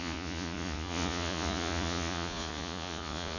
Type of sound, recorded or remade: remade